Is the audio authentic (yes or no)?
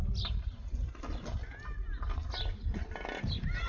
yes